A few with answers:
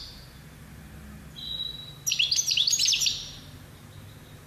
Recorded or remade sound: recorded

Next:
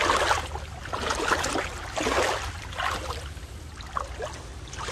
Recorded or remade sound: recorded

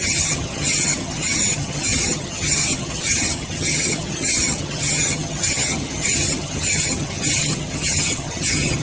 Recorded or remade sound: remade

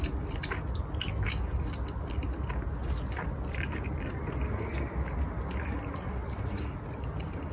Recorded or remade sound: recorded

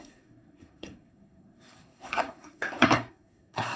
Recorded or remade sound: remade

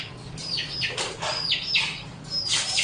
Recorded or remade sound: recorded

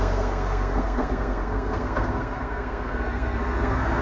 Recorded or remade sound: remade